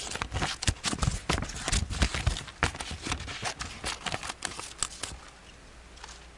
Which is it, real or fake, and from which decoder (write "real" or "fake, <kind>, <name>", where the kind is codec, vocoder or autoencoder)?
real